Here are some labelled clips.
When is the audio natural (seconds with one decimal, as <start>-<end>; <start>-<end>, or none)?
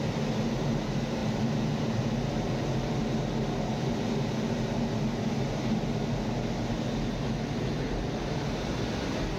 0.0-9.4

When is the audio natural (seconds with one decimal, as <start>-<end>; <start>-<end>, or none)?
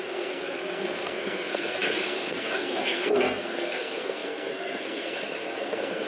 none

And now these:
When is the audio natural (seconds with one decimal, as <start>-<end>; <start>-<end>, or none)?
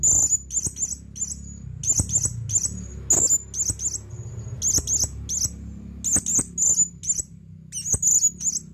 0.0-8.7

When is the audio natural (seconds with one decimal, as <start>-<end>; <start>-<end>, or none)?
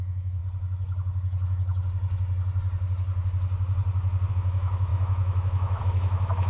0.4-4.3